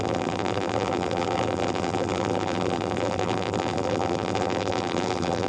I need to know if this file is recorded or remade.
remade